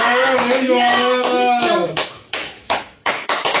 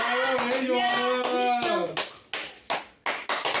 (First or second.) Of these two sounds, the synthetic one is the first